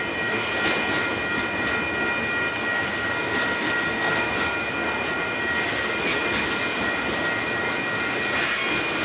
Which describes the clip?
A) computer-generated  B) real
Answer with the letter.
B